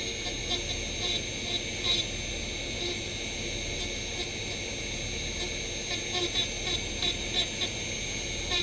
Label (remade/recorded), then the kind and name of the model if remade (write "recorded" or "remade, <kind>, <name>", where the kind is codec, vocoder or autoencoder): recorded